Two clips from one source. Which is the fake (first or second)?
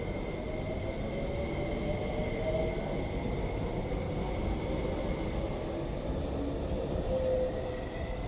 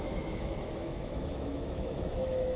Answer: second